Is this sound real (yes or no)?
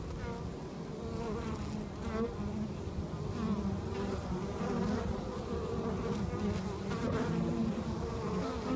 yes